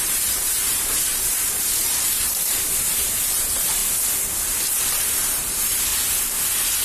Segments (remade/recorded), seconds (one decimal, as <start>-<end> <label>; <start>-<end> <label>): 0.0-3.8 remade; 3.8-4.6 recorded; 4.6-5.9 remade; 5.9-6.8 recorded